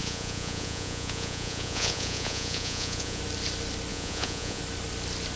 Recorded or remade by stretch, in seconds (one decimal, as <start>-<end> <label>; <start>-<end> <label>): 0.0-3.2 remade; 3.2-3.9 recorded; 3.9-4.6 remade; 4.6-5.4 recorded